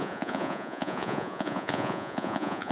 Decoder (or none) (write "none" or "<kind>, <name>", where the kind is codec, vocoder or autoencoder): vocoder, Vocos